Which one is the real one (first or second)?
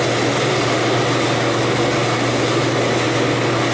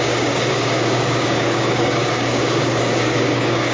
first